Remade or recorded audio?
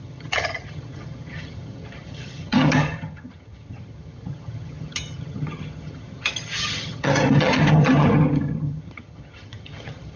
remade